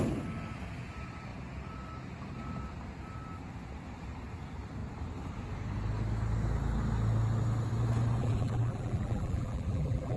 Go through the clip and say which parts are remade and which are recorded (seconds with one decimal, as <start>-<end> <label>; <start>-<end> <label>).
0.0-8.2 recorded; 8.2-10.2 remade

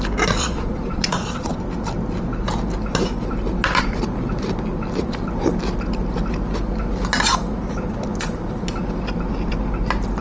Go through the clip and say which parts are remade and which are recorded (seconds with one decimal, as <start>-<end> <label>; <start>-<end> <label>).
0.0-0.4 recorded; 0.4-1.6 remade; 1.6-10.2 recorded

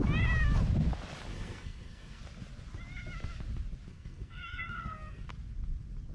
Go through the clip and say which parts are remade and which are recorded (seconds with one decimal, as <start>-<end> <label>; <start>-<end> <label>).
0.0-1.3 recorded; 1.3-2.2 remade; 2.2-3.9 recorded; 3.9-5.3 remade; 5.3-6.1 recorded

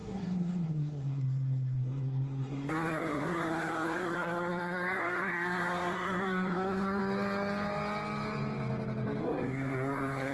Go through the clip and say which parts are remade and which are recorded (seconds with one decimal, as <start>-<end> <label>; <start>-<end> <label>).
0.0-7.0 remade; 7.0-9.2 recorded; 9.2-10.3 remade

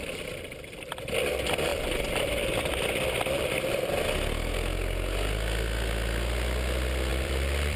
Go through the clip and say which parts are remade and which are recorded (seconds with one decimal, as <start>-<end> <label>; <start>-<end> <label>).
0.0-1.7 recorded; 1.7-4.1 remade; 4.1-7.1 recorded; 7.1-7.8 remade